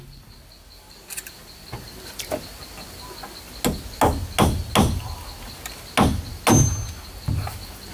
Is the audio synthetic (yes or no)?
no